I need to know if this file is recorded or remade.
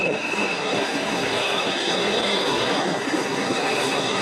remade